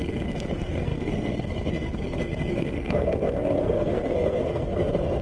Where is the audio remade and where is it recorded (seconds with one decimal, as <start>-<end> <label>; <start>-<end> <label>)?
0.0-5.2 remade